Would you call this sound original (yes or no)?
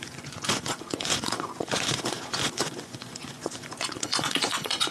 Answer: no